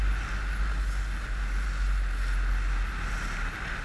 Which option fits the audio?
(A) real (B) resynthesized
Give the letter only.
A